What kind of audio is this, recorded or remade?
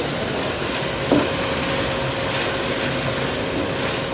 recorded